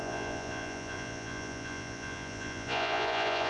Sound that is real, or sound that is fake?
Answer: fake